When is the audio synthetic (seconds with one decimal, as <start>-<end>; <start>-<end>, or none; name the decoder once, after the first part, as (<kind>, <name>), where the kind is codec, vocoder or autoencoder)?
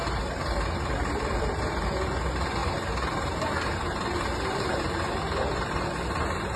0.0-1.6 (vocoder, BigVGAN v2); 2.6-5.1